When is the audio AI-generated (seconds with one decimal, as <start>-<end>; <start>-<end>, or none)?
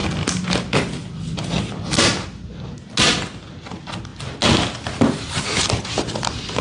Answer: none